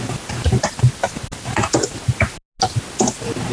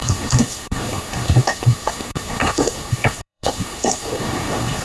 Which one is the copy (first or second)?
second